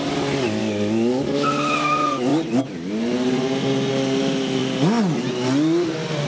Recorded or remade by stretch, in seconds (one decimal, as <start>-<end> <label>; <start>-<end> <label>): 0.0-0.6 recorded; 0.6-1.5 remade; 1.5-6.3 recorded